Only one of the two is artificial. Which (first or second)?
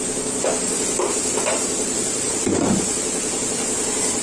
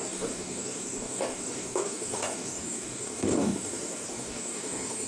second